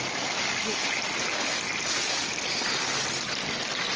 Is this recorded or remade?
recorded